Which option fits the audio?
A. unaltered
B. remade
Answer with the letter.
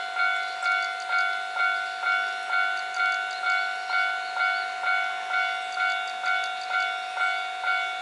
A